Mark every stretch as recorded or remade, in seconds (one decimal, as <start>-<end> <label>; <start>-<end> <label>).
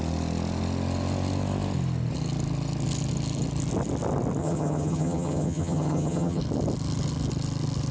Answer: 0.0-4.4 recorded; 4.4-6.4 remade; 6.4-7.9 recorded